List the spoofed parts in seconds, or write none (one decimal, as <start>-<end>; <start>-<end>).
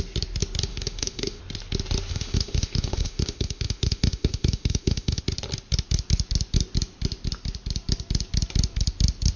0.7-1.4; 2.1-5.2